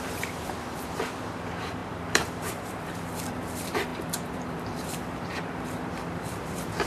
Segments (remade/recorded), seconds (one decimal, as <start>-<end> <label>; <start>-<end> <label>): 0.0-6.9 remade